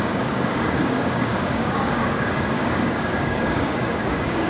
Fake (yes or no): yes